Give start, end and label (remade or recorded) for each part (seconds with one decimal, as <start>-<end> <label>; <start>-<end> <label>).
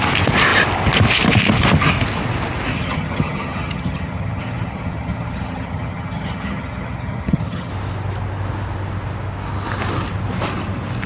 0.0-2.7 recorded; 2.7-7.7 remade; 7.7-11.1 recorded